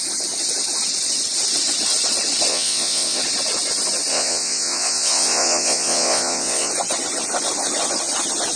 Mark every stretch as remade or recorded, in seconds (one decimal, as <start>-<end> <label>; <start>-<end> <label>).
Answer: 0.0-2.5 recorded; 2.5-3.2 remade; 3.2-4.1 recorded; 4.1-6.7 remade; 6.7-8.6 recorded